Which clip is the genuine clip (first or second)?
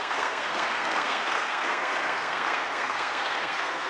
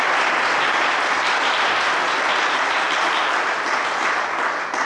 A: second